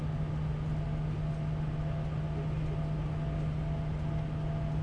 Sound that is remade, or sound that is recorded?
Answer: recorded